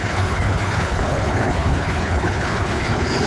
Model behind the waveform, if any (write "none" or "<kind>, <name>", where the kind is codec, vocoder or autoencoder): codec, HILCodec